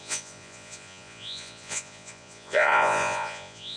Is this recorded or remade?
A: remade